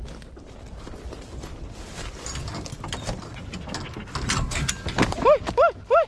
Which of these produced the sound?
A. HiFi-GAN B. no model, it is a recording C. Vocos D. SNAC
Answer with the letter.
B